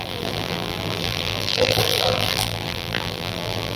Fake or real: fake